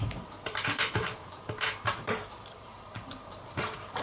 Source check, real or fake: fake